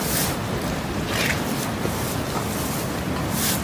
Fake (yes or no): no